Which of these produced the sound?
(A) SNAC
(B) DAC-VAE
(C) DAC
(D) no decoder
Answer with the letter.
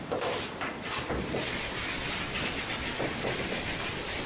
D